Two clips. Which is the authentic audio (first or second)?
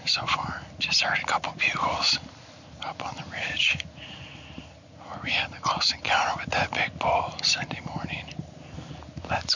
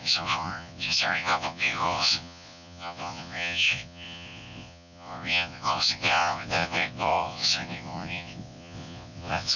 first